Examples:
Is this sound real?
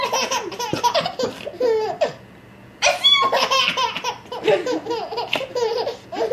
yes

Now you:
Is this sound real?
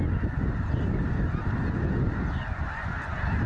yes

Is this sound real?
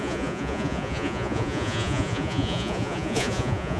no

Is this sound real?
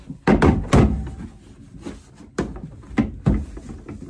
yes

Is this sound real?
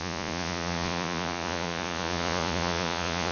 no